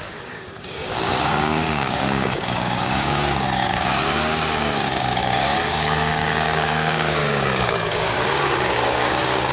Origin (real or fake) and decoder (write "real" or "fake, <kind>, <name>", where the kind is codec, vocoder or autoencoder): fake, codec, DAC